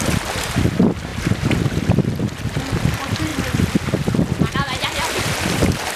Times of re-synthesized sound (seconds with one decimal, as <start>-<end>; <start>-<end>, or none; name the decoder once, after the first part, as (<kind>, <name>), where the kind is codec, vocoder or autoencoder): none